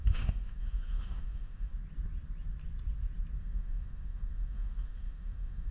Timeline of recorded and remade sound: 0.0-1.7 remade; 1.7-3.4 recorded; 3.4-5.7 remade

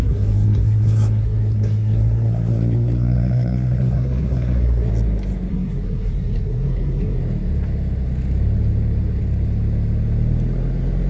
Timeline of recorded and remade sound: 0.0-4.9 remade; 4.9-5.5 recorded; 5.5-7.2 remade; 7.2-11.1 recorded

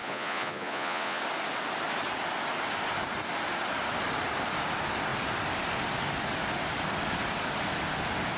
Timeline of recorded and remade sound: 0.0-1.2 remade; 1.2-8.4 recorded

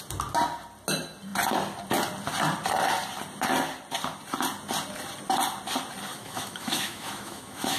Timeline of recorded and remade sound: 0.0-6.1 recorded; 6.1-7.8 remade

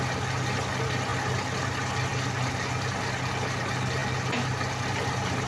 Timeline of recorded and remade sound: 0.0-5.5 recorded

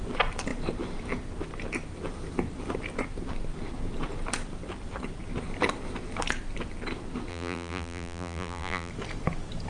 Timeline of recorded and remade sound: 0.0-7.3 recorded; 7.3-8.9 remade; 8.9-9.7 recorded

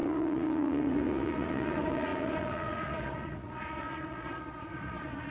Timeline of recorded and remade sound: 0.0-5.3 remade